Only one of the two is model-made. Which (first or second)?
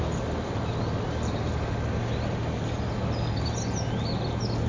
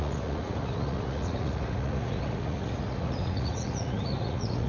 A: second